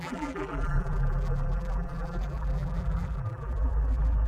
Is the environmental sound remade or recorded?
remade